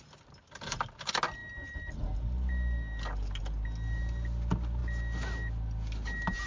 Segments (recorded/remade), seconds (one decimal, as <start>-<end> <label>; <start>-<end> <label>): 0.0-6.5 recorded